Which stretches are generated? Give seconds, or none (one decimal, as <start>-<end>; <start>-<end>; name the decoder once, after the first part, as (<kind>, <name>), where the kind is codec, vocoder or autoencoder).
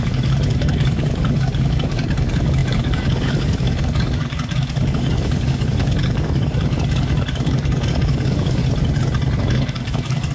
0.0-8.6 (codec, DAC); 9.4-10.3